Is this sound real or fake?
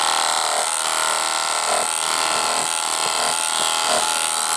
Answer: real